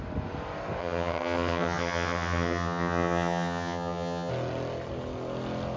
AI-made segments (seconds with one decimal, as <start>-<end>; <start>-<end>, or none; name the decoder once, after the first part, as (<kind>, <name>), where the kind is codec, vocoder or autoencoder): 0.8-4.3 (vocoder, HiFi-GAN)